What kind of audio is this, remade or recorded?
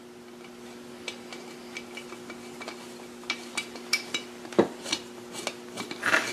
recorded